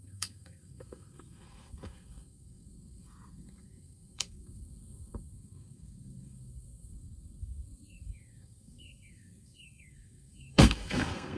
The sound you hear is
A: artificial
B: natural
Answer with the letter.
A